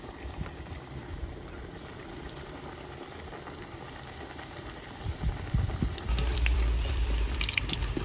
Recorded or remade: remade